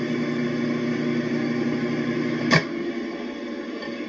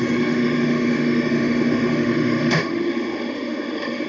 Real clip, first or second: first